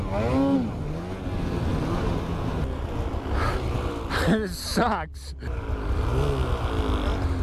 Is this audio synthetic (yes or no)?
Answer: no